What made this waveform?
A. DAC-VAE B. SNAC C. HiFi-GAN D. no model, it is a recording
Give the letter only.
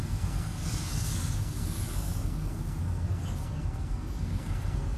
B